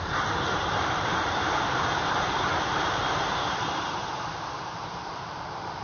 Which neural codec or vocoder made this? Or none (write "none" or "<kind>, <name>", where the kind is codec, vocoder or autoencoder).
vocoder, BigVGAN v2